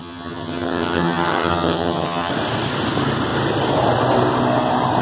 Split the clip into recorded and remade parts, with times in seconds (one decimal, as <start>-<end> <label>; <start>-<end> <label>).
0.0-2.3 remade; 2.3-5.0 recorded